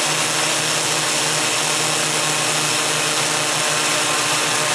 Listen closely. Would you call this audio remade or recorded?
recorded